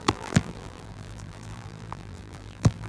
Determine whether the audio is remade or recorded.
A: remade